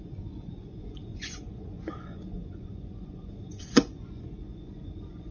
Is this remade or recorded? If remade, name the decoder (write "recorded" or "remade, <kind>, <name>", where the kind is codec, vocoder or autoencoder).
remade, vocoder, Vocos